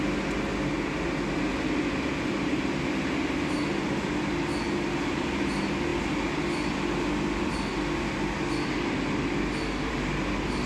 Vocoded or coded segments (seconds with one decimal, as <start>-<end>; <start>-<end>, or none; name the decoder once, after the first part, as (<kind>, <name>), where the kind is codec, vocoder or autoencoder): none